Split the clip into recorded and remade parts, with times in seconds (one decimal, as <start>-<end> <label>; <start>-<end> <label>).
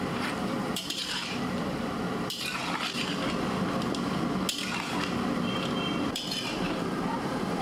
0.0-2.6 remade; 2.6-6.1 recorded; 6.1-7.6 remade